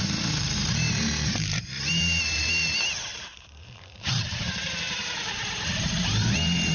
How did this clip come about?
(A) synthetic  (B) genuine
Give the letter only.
A